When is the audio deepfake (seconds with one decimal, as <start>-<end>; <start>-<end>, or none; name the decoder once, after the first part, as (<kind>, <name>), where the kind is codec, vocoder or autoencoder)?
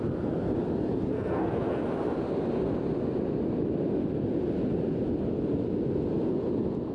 1.1-1.8 (codec, SNAC)